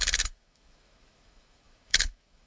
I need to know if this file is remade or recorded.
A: remade